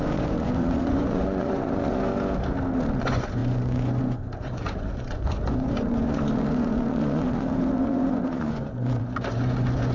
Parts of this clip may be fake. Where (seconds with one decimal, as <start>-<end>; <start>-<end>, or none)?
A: 0.0-2.1; 3.0-9.9